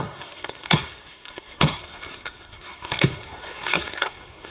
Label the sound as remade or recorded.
remade